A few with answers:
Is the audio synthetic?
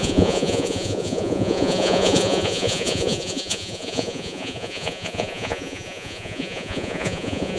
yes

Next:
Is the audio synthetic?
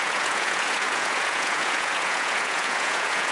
yes